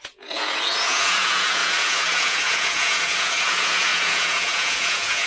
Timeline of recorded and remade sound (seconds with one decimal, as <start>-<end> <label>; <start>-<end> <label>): 0.0-5.3 remade